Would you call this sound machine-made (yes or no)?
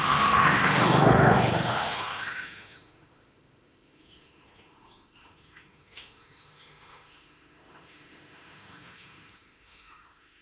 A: yes